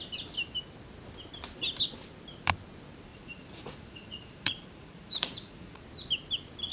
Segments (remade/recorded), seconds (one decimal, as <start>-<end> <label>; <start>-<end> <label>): 0.0-3.1 recorded; 3.1-5.8 remade; 5.8-6.7 recorded